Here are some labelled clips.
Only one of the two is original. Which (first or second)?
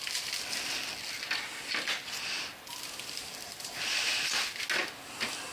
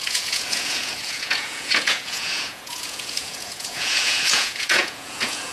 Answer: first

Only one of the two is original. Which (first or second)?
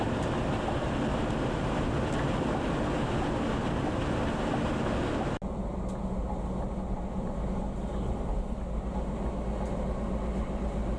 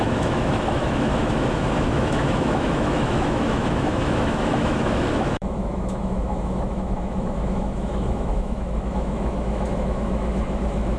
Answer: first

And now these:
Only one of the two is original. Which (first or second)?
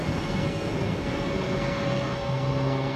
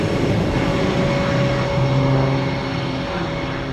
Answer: second